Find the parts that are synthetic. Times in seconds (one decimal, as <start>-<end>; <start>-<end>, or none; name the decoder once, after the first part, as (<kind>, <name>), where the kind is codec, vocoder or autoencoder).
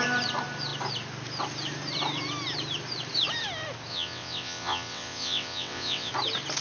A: 3.9-6.1 (vocoder, WaveNeXt)